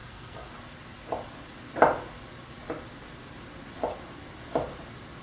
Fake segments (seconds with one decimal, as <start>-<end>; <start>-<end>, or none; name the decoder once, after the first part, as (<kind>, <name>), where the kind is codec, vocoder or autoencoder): 0.0-0.5 (codec, SNAC)